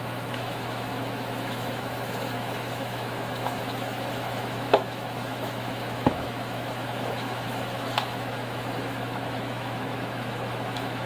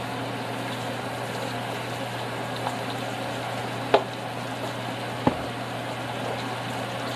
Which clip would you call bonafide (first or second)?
second